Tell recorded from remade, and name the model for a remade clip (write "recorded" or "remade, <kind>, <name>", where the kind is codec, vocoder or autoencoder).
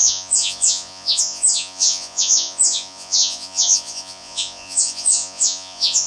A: remade, vocoder, Vocos